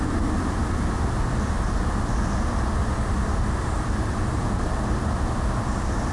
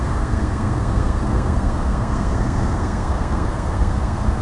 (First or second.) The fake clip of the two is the second